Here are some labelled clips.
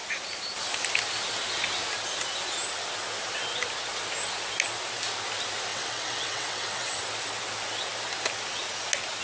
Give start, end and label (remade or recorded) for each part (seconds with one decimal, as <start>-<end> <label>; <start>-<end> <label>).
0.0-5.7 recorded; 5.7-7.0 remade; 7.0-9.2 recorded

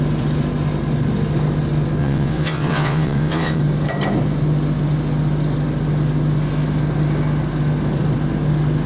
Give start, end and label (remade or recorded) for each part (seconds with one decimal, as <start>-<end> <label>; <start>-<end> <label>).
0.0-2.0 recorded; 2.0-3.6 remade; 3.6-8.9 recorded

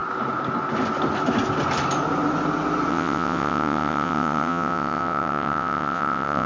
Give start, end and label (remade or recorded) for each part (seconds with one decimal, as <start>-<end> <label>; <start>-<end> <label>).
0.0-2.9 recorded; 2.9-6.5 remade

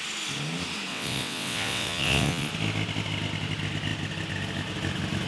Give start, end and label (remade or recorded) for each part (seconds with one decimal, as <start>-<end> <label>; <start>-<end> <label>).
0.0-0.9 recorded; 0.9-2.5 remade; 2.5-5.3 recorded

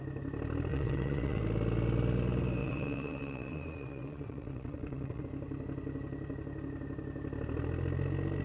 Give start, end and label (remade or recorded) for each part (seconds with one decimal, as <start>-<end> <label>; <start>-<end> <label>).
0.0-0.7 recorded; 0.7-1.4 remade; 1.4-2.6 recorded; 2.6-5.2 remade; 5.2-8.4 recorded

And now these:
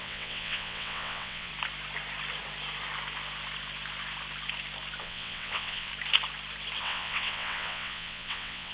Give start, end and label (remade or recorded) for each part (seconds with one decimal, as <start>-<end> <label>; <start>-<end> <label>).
0.0-1.5 remade; 1.5-5.0 recorded; 5.0-5.9 remade; 5.9-6.8 recorded; 6.8-8.7 remade

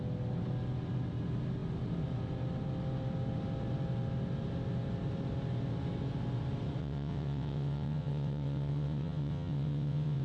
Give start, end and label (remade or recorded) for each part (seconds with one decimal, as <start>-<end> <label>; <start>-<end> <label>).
0.0-6.8 recorded; 6.8-10.2 remade